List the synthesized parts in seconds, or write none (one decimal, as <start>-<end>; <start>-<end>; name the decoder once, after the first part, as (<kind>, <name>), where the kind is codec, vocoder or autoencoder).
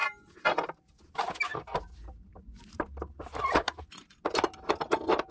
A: none